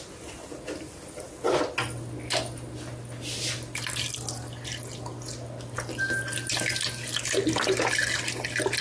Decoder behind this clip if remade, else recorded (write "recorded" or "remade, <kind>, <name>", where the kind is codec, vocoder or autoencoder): recorded